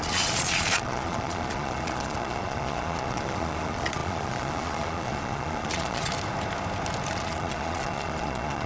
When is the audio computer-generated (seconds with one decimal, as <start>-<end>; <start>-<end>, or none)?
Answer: 0.0-6.1; 7.1-8.7